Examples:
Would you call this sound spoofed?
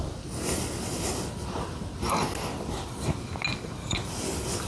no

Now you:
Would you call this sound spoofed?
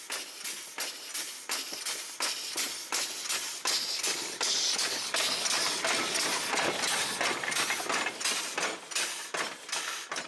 no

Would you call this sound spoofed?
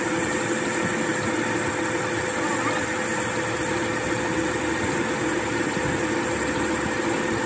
no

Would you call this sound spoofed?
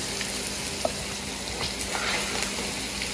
no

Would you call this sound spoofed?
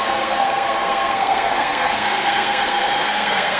yes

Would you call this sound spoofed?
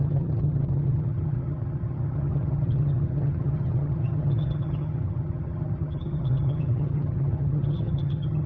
yes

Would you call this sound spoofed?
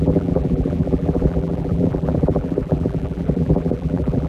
yes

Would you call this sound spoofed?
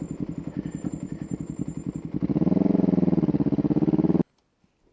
no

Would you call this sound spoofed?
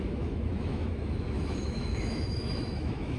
yes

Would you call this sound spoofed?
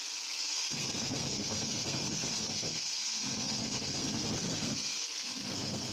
yes